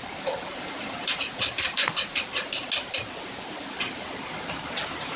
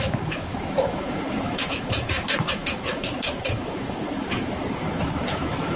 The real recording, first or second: first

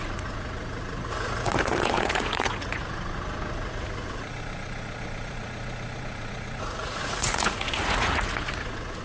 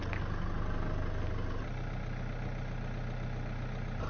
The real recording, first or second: second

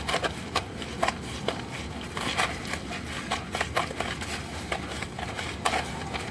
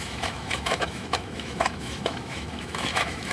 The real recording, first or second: first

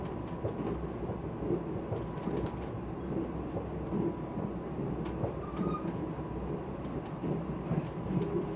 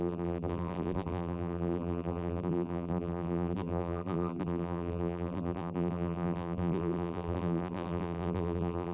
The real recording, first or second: first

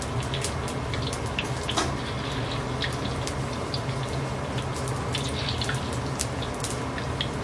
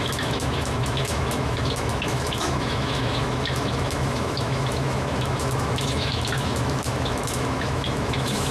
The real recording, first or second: first